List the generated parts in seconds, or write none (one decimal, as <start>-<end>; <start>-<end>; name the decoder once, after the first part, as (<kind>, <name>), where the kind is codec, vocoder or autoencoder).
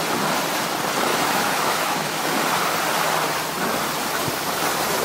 1.1-2.2 (autoencoder, DAC-VAE)